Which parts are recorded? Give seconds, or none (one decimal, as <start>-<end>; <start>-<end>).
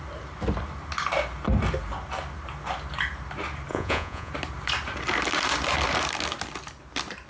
0.0-3.7; 4.3-7.3